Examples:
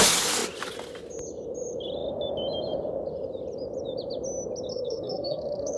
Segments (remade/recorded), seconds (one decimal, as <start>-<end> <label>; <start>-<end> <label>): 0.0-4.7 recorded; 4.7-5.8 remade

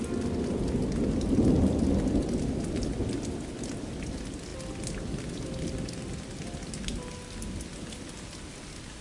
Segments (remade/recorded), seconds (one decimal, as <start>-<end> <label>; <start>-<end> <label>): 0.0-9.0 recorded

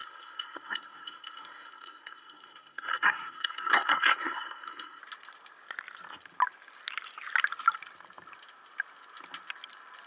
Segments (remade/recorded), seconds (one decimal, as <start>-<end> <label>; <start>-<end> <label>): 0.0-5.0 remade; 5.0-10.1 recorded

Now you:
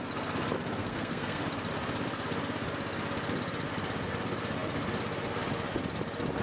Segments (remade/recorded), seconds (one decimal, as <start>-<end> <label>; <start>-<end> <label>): 0.0-0.8 recorded; 0.8-1.4 remade; 1.4-6.4 recorded

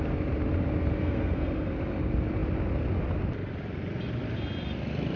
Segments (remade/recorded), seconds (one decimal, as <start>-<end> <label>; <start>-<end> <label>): 0.0-1.0 recorded; 1.0-1.7 remade; 1.7-5.2 recorded

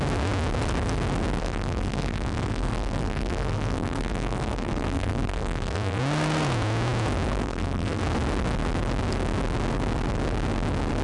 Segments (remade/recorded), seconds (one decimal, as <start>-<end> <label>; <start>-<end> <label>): 0.0-1.4 recorded; 1.4-6.0 remade; 6.0-7.4 recorded; 7.4-8.0 remade; 8.0-11.0 recorded

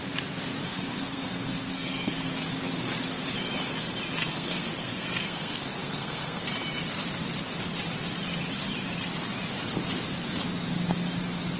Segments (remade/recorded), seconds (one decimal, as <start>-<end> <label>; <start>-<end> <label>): 0.0-0.7 recorded; 0.7-2.3 remade; 2.3-4.2 recorded; 4.2-6.5 remade; 6.5-11.6 recorded

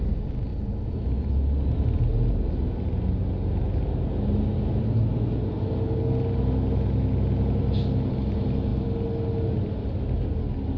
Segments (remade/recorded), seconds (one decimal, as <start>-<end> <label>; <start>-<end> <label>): 0.0-10.8 recorded